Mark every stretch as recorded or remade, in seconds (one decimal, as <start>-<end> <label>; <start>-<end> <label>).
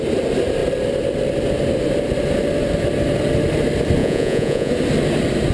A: 0.0-4.0 recorded; 4.0-4.7 remade; 4.7-5.5 recorded